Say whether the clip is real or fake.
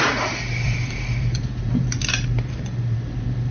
fake